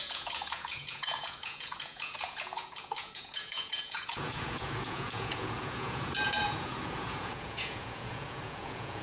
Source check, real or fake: fake